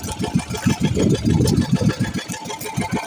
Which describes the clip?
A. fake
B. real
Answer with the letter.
B